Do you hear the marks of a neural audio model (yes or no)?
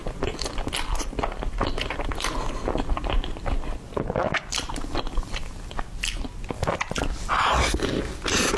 no